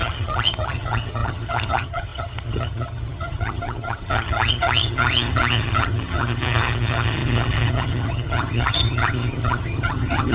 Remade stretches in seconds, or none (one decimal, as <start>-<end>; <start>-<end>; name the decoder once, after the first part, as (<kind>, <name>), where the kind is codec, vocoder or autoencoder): 0.0-10.3 (vocoder, HiFi-GAN)